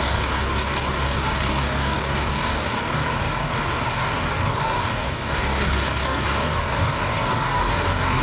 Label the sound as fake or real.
fake